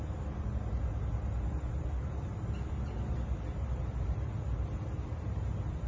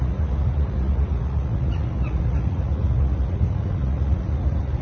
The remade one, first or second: second